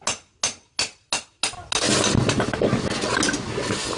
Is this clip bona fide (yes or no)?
yes